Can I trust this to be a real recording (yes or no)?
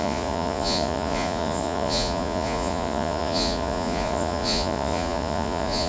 no